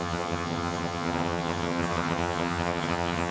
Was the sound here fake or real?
fake